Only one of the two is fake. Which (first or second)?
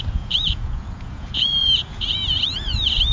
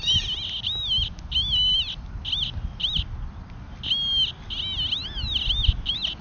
first